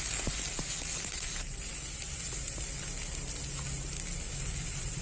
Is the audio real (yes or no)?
yes